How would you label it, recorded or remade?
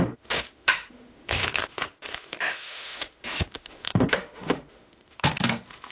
remade